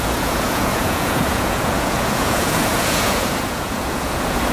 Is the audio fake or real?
fake